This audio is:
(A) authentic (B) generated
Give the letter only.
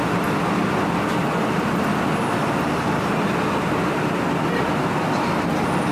A